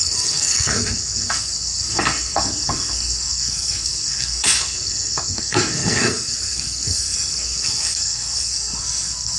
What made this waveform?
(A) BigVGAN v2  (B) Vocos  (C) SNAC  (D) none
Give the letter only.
C